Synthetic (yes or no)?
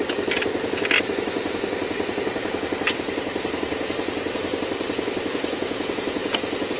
no